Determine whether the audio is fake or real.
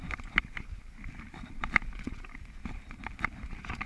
real